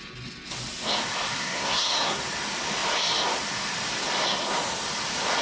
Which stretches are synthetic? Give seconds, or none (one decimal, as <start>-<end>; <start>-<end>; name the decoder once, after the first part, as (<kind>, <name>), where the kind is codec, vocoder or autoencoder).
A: 1.4-2.2 (codec, SNAC)